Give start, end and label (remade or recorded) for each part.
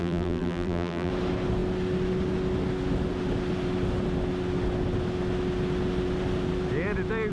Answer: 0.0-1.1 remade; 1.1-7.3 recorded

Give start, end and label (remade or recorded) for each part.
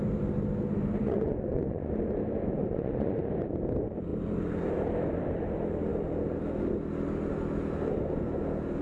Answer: 0.0-1.0 recorded; 1.0-1.9 remade; 1.9-2.6 recorded; 2.6-3.3 remade; 3.3-8.8 recorded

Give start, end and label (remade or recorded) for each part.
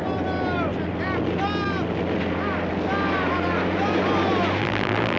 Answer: 0.0-4.6 recorded; 4.6-5.2 remade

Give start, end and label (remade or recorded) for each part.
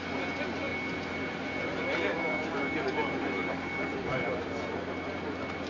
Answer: 0.0-2.1 recorded; 2.1-2.7 remade; 2.7-5.7 recorded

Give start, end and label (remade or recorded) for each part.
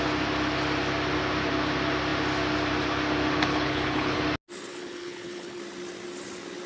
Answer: 0.0-3.5 recorded; 3.5-4.2 remade; 4.2-4.7 recorded; 4.7-5.6 remade; 5.6-6.7 recorded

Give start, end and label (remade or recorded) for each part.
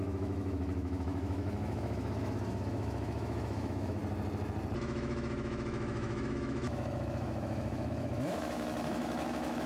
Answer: 0.0-4.0 remade; 4.0-4.8 recorded; 4.8-9.7 remade